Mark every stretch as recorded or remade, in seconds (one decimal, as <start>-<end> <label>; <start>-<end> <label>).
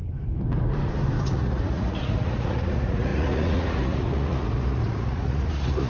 0.0-1.2 recorded; 1.2-5.9 remade